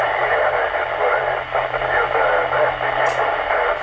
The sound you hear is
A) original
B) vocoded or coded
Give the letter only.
A